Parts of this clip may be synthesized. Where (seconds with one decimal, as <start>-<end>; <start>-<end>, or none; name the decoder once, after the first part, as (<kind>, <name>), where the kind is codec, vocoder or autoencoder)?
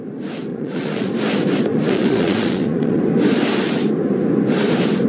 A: 0.5-1.1 (vocoder, Vocos); 1.7-3.0